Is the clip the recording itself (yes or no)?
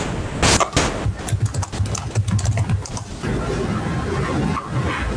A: yes